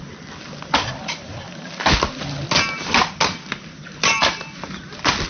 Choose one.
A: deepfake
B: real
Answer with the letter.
B